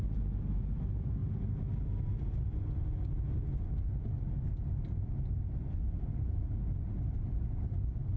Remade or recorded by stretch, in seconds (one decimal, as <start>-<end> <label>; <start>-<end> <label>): 0.0-1.2 remade; 1.2-6.1 recorded; 6.1-8.2 remade